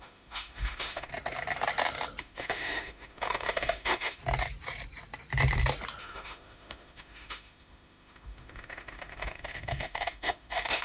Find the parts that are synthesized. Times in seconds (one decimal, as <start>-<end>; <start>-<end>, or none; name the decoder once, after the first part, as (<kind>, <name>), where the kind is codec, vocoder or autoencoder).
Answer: 0.0-1.1 (autoencoder, DAC-VAE); 2.2-4.2; 6.0-10.8